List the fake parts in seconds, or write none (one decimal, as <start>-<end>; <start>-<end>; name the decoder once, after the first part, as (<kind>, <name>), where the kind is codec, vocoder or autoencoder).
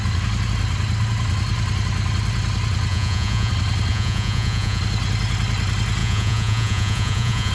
2.9-3.5 (vocoder, Vocos); 3.9-4.8; 6.0-7.5